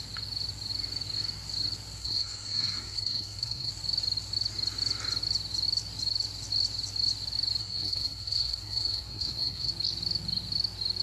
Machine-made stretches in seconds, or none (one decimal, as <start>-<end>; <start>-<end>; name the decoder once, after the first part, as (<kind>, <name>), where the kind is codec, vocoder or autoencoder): 2.0-3.7 (codec, SNAC); 7.6-9.7